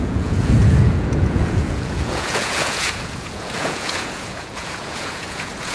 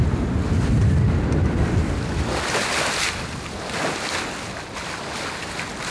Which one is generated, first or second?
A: first